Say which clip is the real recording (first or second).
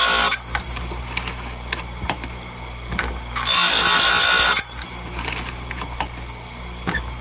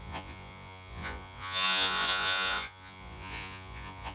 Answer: first